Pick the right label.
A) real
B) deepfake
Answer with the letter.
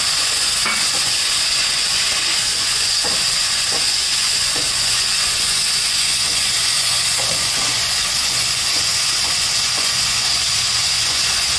B